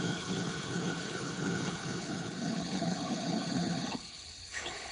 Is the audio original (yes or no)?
no